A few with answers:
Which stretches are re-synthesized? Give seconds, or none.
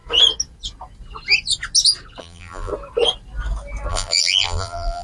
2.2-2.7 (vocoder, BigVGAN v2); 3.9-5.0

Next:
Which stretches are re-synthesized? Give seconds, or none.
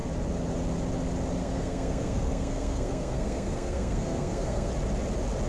1.4-4.7 (codec, SNAC)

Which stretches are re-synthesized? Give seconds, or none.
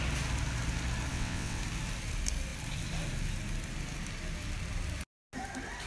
1.1-1.6 (vocoder, WaveNeXt)